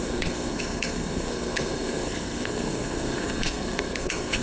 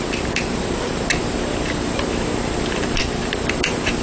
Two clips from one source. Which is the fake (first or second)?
first